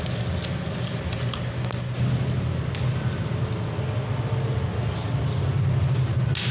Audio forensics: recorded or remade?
recorded